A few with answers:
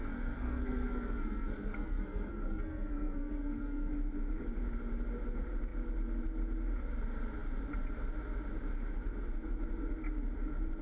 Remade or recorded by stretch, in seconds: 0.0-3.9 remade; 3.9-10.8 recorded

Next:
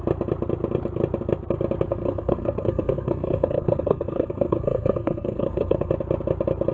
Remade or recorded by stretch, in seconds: 0.0-1.9 recorded; 1.9-5.9 remade; 5.9-6.7 recorded

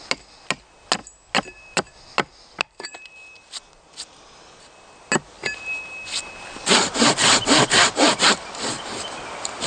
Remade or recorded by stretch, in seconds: 0.0-9.7 recorded

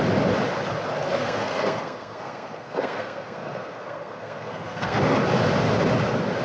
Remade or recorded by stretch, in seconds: 0.0-1.2 recorded; 1.2-5.0 remade; 5.0-6.4 recorded

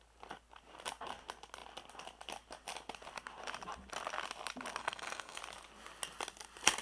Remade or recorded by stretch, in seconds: 0.0-4.8 recorded; 4.8-5.4 remade; 5.4-6.8 recorded

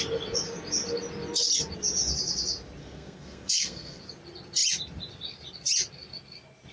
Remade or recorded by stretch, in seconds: 0.0-2.8 recorded; 2.8-4.0 remade; 4.0-6.7 recorded

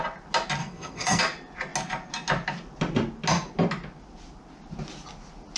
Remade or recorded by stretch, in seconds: 0.0-0.6 recorded; 0.6-1.2 remade; 1.2-5.6 recorded